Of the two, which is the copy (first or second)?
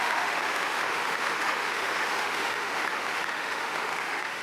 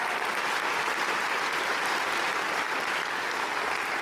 first